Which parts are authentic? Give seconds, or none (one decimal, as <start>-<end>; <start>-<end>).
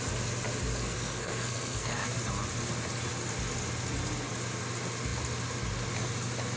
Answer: 0.0-0.8; 2.1-6.6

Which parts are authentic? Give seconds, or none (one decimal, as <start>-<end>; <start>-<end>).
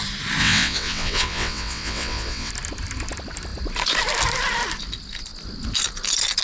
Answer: 0.0-0.4; 2.5-6.4